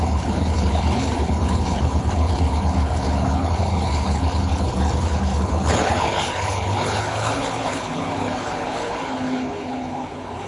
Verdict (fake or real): fake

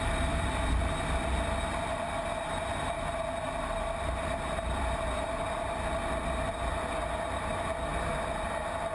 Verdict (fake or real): real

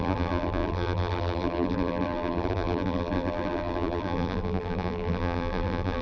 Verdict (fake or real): fake